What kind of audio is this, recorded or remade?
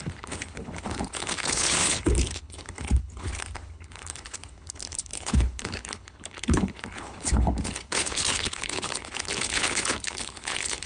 remade